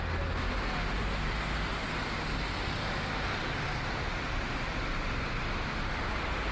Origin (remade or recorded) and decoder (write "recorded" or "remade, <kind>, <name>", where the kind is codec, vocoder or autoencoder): recorded